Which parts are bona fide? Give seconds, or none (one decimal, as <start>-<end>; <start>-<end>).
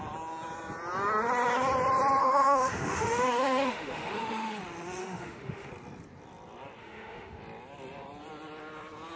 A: 0.0-2.2; 4.6-5.0; 5.7-6.8; 7.4-9.2